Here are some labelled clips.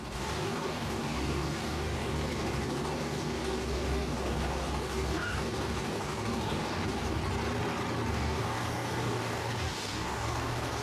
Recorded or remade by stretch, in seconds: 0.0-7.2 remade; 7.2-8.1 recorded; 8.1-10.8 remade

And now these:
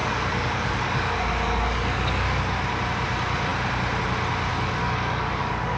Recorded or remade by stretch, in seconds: 0.0-2.4 remade; 2.4-4.5 recorded; 4.5-5.8 remade

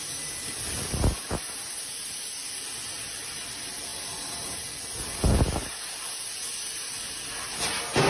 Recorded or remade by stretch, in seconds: 0.0-8.1 recorded